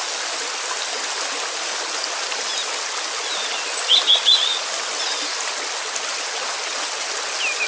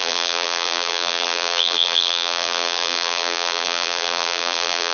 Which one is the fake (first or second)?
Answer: second